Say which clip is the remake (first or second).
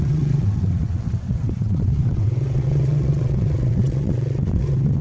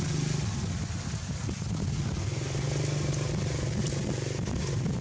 first